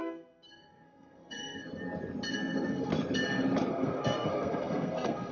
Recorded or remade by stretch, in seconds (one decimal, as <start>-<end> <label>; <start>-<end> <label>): 0.0-1.7 remade; 1.7-2.3 recorded; 2.3-2.9 remade; 2.9-3.7 recorded; 3.7-5.3 remade